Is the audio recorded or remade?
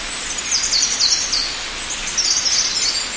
recorded